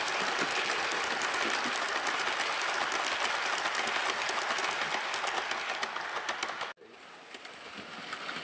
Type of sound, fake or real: real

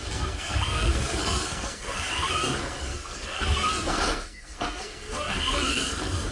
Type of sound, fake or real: fake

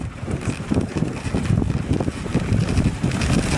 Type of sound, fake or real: real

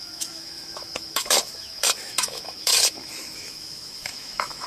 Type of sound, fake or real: fake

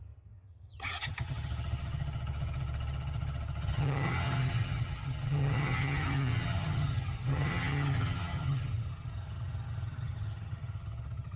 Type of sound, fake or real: fake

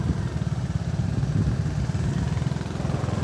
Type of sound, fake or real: real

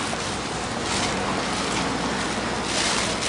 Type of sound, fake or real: real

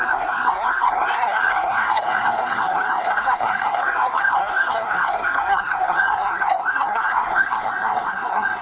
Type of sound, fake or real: fake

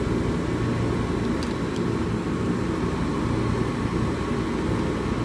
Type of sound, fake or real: real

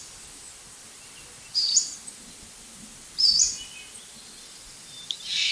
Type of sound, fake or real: fake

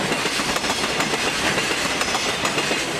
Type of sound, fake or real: real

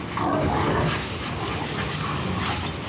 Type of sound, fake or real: real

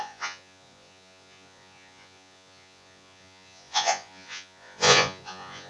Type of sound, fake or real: fake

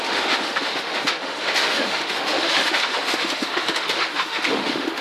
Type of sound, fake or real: fake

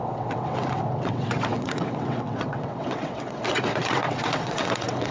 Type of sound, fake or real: fake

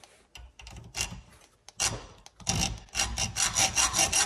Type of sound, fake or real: real